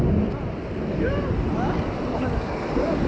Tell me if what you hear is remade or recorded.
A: recorded